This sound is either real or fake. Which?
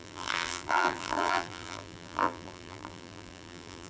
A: fake